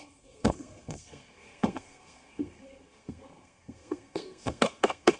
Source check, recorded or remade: remade